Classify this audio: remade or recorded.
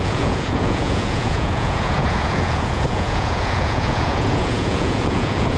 remade